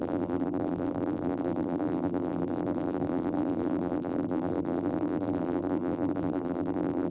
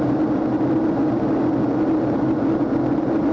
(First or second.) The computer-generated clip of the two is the first